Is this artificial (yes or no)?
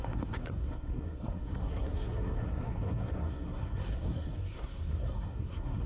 yes